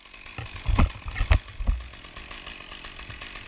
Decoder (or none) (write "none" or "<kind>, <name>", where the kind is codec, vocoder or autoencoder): none